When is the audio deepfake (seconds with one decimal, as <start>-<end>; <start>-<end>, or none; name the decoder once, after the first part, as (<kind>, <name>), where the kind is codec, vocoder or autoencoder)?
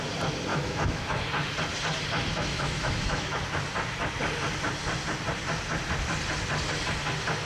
0.5-1.2 (autoencoder, DAC-VAE); 2.3-3.4